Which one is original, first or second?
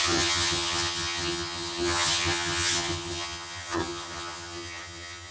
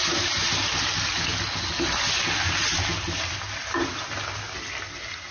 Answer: second